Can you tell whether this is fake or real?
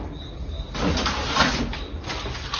real